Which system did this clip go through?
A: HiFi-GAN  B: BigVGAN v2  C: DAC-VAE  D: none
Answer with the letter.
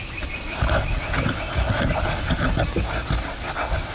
D